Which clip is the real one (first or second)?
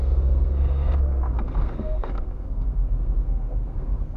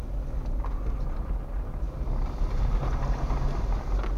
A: second